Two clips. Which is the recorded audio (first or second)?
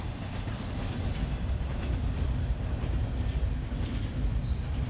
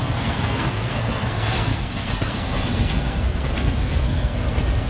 first